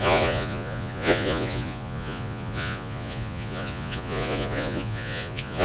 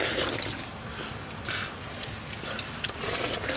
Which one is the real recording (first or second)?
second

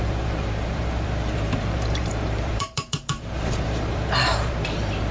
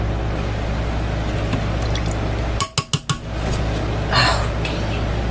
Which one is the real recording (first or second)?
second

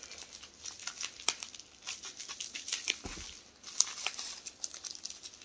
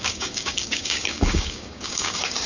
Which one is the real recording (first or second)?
first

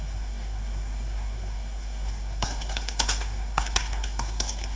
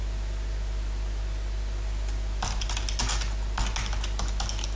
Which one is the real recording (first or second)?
second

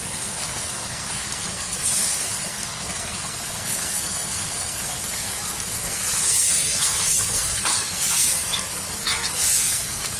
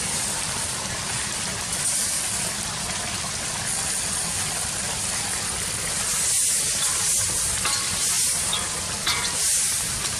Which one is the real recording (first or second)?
second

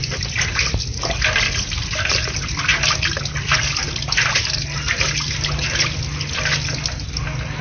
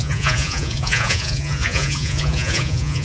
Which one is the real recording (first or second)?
first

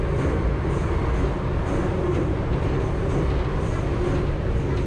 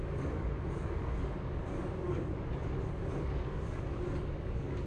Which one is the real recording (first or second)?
first